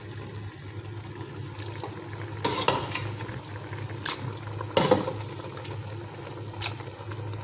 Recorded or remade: recorded